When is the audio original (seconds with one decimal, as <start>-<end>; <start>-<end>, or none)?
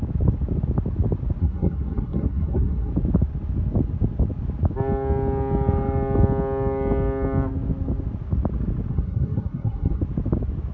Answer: 0.0-1.4; 2.9-8.9; 10.0-10.7